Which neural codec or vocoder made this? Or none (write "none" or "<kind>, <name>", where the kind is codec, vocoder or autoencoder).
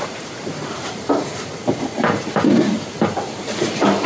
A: vocoder, BigVGAN v2